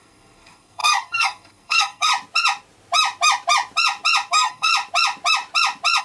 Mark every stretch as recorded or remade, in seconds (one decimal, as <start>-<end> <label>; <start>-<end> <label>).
0.0-2.1 remade; 2.1-4.3 recorded; 4.3-4.7 remade; 4.7-6.0 recorded